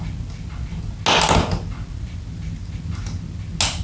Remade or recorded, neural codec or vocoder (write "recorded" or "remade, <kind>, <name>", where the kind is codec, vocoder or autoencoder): recorded